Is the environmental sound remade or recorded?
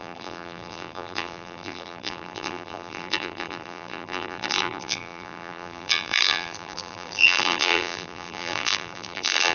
remade